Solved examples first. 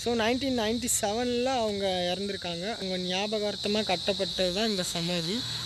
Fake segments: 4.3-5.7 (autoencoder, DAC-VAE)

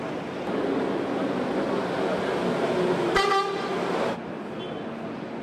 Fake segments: none

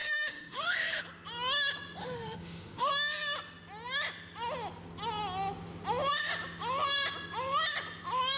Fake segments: 0.0-1.0 (autoencoder, DAC-VAE); 2.0-2.9

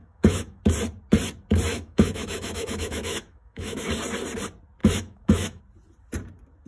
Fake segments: 0.0-0.6 (autoencoder, DAC-VAE); 1.7-3.9; 4.8-5.6

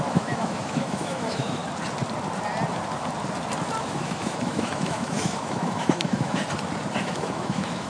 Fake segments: 0.0-1.6 (autoencoder, DAC-VAE); 3.8-6.4; 7.0-7.9